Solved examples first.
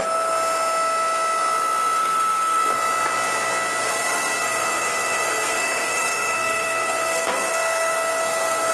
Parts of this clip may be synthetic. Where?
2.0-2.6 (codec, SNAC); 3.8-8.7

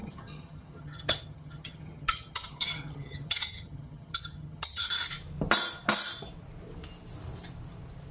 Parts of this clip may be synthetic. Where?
0.0-4.9 (vocoder, HiFi-GAN)